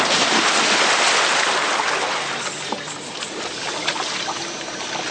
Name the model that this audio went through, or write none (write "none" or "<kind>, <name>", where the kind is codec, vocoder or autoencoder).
none